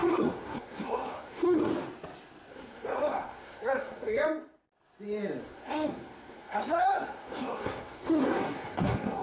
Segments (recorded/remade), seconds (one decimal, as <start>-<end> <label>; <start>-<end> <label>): 0.0-1.7 remade; 1.7-2.5 recorded; 2.5-4.2 remade; 4.2-5.4 recorded; 5.4-9.2 remade